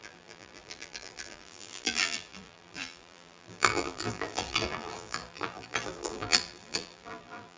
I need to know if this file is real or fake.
fake